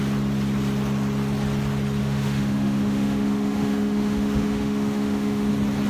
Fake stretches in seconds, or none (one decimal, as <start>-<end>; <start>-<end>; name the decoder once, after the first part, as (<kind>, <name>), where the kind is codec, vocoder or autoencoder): 2.0-5.5 (autoencoder, DAC-VAE)